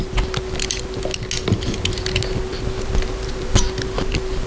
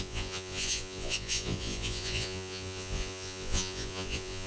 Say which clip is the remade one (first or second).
second